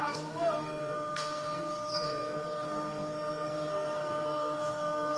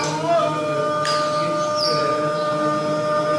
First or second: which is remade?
first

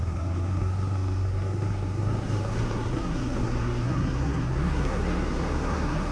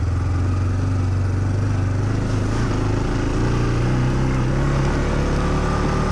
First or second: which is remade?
first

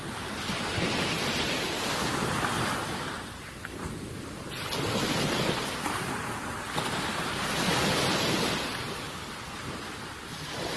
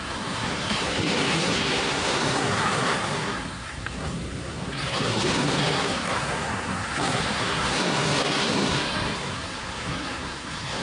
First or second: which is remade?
second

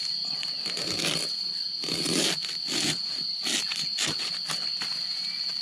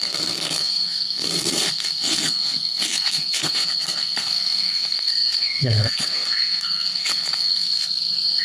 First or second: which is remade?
second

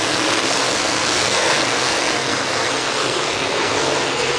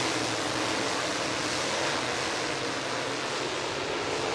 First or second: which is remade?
first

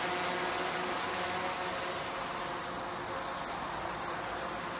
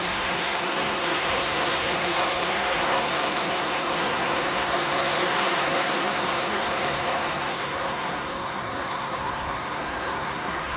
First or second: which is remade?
second